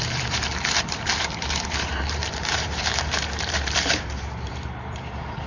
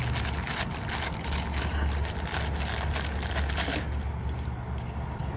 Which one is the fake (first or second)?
first